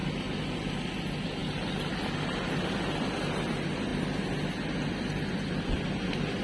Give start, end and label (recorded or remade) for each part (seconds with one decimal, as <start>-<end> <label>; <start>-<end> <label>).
0.0-6.4 recorded